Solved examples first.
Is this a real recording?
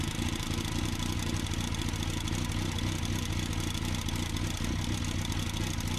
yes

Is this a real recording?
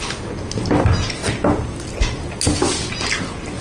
yes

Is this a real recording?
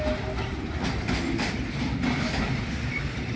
yes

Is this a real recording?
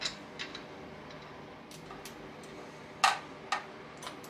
yes